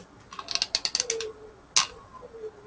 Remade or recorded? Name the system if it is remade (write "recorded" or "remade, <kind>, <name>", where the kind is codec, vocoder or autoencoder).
recorded